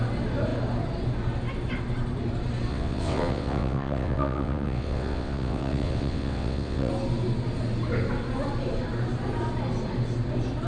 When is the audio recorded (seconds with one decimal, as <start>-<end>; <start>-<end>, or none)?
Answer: 0.0-2.7; 6.9-10.7